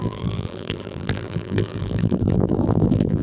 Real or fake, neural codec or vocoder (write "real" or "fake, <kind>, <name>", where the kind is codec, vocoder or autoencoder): fake, vocoder, BigVGAN v2